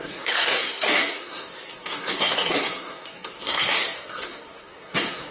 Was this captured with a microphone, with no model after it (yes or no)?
no